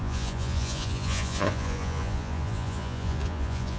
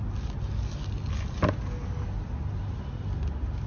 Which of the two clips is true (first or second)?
second